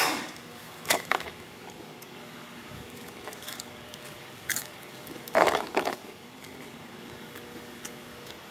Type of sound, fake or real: fake